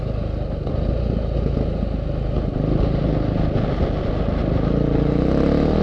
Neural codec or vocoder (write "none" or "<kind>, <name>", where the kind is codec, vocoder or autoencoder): none